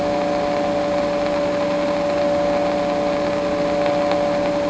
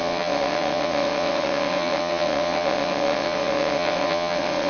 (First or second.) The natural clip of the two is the first